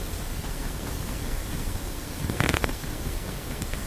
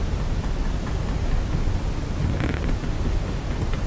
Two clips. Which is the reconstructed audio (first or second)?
first